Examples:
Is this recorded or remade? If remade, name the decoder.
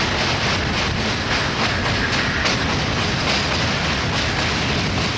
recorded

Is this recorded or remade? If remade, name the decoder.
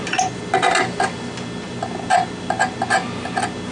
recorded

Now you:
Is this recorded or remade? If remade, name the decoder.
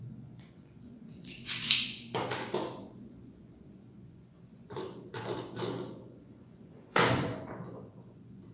remade, vocoder, Vocos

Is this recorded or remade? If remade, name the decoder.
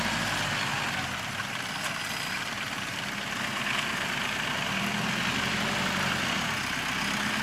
recorded